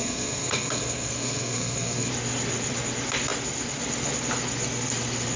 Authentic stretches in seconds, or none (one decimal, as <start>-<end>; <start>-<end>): 2.1-5.4